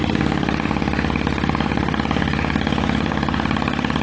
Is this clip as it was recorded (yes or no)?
yes